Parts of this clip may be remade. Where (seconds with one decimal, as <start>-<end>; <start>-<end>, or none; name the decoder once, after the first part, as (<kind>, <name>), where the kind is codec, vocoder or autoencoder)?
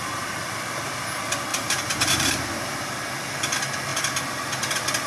1.5-2.8 (vocoder, BigVGAN v2)